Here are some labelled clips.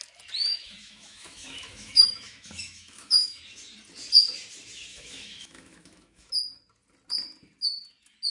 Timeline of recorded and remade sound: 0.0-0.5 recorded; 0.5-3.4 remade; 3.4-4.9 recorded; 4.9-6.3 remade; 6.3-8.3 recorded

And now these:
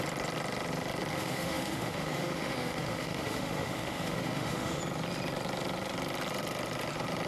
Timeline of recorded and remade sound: 0.0-1.1 recorded; 1.1-4.8 remade; 4.8-7.3 recorded

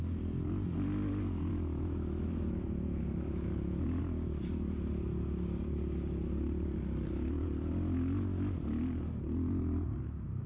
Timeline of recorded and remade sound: 0.0-1.5 recorded; 1.5-4.0 remade; 4.0-10.5 recorded

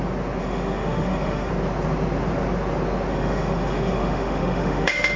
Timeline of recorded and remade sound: 0.0-0.4 recorded; 0.4-1.5 remade; 1.5-3.1 recorded; 3.1-5.2 remade

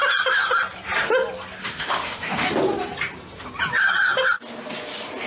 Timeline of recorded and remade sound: 0.0-1.6 recorded; 1.6-2.5 remade; 2.5-5.3 recorded

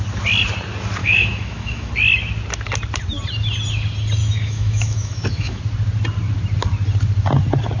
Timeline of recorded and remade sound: 0.0-1.0 recorded; 1.0-1.9 remade; 1.9-4.2 recorded; 4.2-5.6 remade; 5.6-7.8 recorded

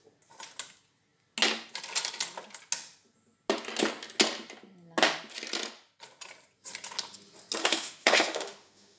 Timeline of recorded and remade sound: 0.0-7.6 recorded; 7.6-9.0 remade

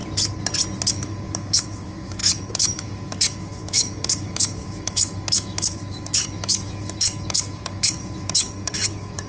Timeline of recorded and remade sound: 0.0-0.9 recorded; 0.9-9.3 remade